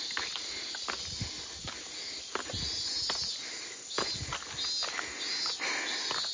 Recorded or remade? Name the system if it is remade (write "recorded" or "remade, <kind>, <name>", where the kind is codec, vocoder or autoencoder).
recorded